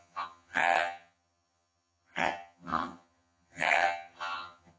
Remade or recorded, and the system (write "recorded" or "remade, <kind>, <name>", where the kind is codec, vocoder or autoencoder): remade, vocoder, HiFi-GAN